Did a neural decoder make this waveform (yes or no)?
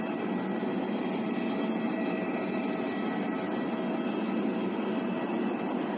no